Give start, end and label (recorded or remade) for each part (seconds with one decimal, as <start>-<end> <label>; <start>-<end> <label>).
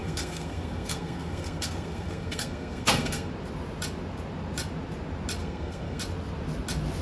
0.0-3.3 remade; 3.3-5.4 recorded; 5.4-6.0 remade; 6.0-7.0 recorded